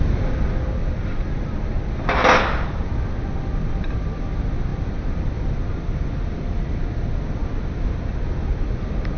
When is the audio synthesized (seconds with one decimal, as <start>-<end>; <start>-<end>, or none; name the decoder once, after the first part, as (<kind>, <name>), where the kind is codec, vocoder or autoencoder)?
0.8-1.5 (vocoder, BigVGAN v2)